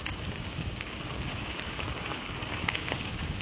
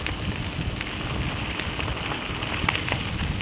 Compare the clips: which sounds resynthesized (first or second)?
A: first